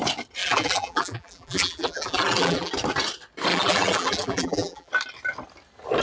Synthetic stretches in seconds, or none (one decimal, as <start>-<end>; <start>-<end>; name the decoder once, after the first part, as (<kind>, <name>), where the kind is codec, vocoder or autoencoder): 0.4-2.7 (vocoder, BigVGAN v2); 3.5-4.9